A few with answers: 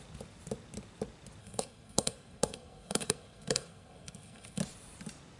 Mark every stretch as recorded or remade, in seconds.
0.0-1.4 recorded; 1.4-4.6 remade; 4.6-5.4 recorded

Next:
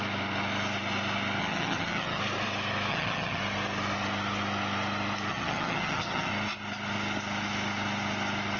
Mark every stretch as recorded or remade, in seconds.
0.0-1.4 recorded; 1.4-2.2 remade; 2.2-2.9 recorded; 2.9-3.4 remade; 3.4-5.3 recorded; 5.3-6.3 remade; 6.3-8.6 recorded

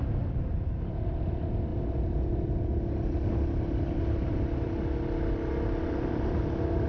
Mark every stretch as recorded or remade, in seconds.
0.0-6.9 recorded

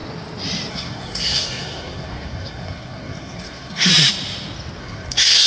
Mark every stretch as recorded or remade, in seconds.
0.0-0.7 recorded; 0.7-3.9 remade; 3.9-4.8 recorded; 4.8-5.5 remade

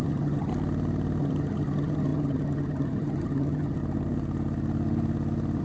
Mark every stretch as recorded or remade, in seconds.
0.0-0.5 remade; 0.5-1.2 recorded; 1.2-3.8 remade; 3.8-5.6 recorded

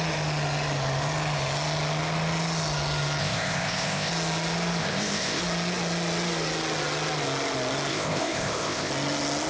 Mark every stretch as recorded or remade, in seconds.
0.0-3.2 recorded; 3.2-4.1 remade; 4.1-4.8 recorded; 4.8-5.4 remade; 5.4-7.9 recorded; 7.9-8.9 remade; 8.9-9.5 recorded